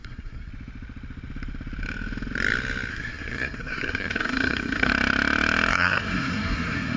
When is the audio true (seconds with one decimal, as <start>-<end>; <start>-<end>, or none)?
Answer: 0.5-2.9; 4.9-5.7